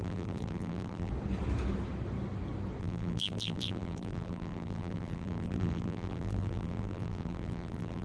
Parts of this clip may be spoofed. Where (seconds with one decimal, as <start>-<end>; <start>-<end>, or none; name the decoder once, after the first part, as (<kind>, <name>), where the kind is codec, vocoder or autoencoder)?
0.0-1.1 (vocoder, BigVGAN v2); 2.8-8.0